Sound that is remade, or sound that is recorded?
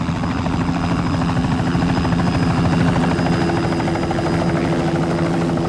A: recorded